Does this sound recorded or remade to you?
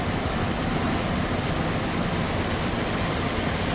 recorded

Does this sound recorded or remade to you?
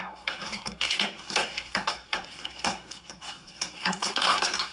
remade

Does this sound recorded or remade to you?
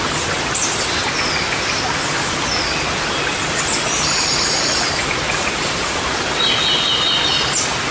recorded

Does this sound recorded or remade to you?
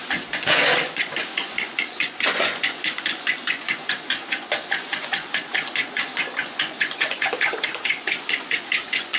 remade